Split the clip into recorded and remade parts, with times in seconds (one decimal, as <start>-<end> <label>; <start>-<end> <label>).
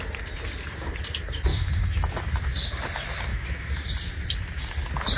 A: 0.0-1.5 recorded; 1.5-2.2 remade; 2.2-3.3 recorded; 3.3-3.9 remade; 3.9-5.2 recorded